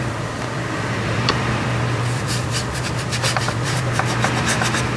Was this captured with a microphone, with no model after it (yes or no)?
no